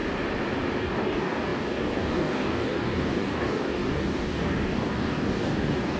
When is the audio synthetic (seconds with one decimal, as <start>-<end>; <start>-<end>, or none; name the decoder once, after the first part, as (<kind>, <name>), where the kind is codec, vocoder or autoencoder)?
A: 0.8-6.0 (codec, DAC)